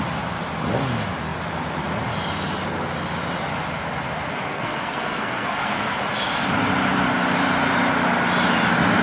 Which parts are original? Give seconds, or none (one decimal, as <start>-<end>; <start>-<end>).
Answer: 0.0-4.3; 6.0-9.0